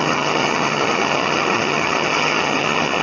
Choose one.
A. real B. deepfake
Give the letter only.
B